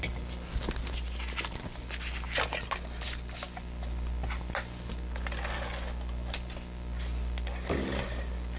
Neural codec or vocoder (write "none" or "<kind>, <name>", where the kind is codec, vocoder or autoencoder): none